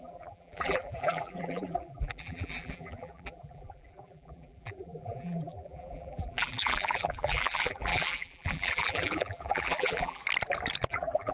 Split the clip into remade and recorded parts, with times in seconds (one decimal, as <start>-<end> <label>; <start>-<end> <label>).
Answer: 0.0-10.2 remade; 10.2-10.9 recorded; 10.9-11.3 remade